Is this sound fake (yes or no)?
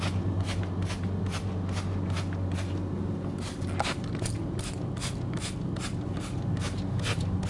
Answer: no